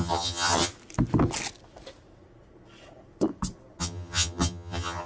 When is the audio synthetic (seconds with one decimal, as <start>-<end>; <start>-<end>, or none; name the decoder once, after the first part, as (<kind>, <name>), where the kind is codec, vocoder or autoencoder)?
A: 0.0-0.7 (vocoder, HiFi-GAN); 3.8-5.1

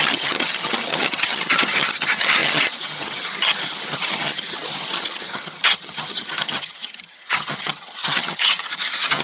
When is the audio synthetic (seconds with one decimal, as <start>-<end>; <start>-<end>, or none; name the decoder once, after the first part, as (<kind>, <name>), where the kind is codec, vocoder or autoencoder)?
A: 0.0-9.2 (vocoder, HiFi-GAN)

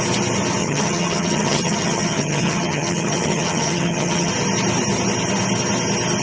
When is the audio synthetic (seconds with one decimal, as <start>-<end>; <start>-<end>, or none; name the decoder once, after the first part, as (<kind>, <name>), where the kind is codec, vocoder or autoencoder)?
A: 0.6-4.3 (vocoder, HiFi-GAN)

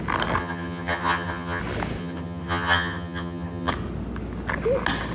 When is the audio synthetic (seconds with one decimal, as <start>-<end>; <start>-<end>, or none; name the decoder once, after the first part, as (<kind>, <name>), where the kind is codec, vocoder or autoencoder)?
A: 0.4-1.6 (vocoder, HiFi-GAN); 2.0-3.7

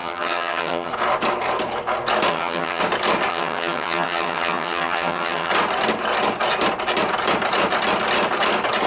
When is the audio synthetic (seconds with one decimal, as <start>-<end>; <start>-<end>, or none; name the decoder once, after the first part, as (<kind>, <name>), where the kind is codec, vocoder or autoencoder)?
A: 0.0-0.9 (vocoder, HiFi-GAN); 2.3-2.8; 3.3-5.5

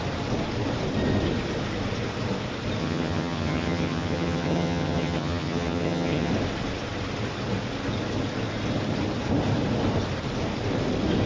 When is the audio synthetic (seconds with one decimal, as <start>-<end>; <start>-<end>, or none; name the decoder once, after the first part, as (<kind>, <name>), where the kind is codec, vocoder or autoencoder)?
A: 2.8-6.3 (vocoder, HiFi-GAN)

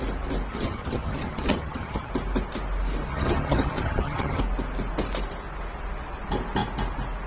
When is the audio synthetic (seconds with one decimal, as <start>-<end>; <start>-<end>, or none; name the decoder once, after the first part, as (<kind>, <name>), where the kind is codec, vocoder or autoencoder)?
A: 0.5-2.1 (vocoder, HiFi-GAN); 3.1-4.4

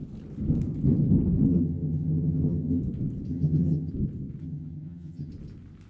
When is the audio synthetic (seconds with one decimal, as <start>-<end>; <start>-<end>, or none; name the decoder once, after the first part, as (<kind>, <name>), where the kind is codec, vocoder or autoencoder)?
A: 1.5-2.8 (vocoder, HiFi-GAN); 3.3-3.9; 4.4-5.3